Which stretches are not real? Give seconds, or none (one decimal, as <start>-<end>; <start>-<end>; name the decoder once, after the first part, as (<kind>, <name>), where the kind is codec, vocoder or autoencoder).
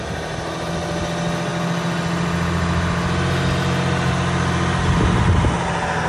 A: none